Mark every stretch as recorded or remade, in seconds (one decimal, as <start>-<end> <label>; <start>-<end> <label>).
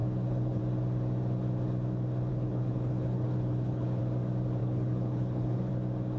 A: 0.0-0.6 remade; 0.6-2.3 recorded; 2.3-4.0 remade; 4.0-4.6 recorded; 4.6-5.7 remade; 5.7-6.2 recorded